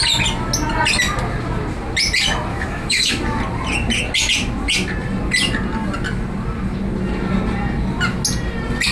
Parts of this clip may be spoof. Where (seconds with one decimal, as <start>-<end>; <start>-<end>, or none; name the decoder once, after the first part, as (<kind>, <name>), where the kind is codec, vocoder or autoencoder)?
2.5-3.1 (autoencoder, DAC-VAE)